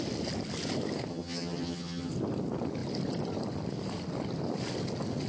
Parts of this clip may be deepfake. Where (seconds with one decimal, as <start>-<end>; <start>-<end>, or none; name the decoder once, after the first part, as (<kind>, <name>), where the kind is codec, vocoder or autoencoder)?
1.1-2.1 (vocoder, HiFi-GAN)